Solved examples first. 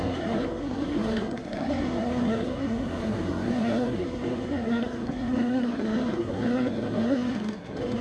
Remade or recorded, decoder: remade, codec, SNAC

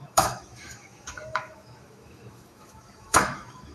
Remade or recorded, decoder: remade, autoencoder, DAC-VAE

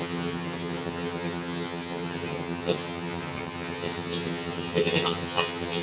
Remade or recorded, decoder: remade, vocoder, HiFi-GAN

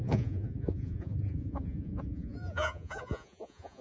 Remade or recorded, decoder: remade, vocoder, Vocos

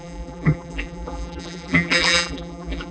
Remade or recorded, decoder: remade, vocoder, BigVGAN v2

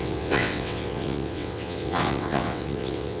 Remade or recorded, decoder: remade, vocoder, WaveNeXt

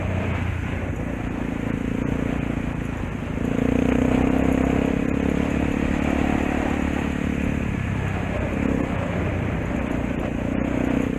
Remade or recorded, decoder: recorded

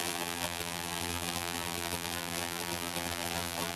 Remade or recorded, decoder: remade, vocoder, BigVGAN v2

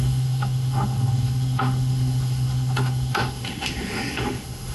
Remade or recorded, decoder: remade, autoencoder, DAC-VAE